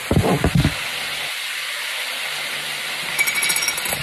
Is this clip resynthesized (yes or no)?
no